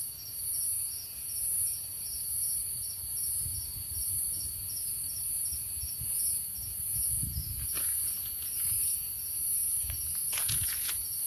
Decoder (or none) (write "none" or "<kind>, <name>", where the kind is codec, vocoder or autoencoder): vocoder, Vocos